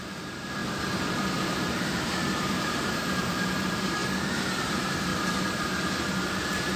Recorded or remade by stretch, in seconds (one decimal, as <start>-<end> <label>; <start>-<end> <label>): 0.0-4.0 remade; 4.0-4.6 recorded; 4.6-6.8 remade